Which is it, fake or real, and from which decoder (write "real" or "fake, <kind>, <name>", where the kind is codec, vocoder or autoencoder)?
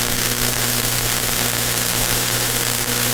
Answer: fake, autoencoder, DAC-VAE